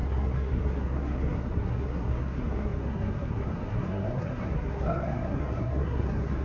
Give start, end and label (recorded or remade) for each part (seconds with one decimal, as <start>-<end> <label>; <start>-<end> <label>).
0.0-6.4 remade